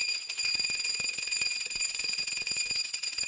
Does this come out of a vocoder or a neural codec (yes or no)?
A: yes